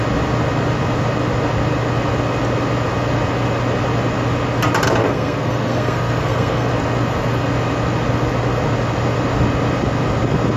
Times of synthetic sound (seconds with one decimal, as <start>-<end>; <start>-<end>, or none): 5.0-6.7